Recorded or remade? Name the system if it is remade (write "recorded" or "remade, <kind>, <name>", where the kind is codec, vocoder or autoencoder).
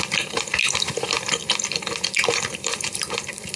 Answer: remade, vocoder, BigVGAN v2